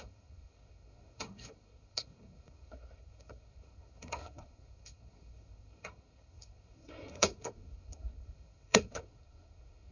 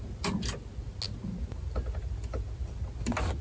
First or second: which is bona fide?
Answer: second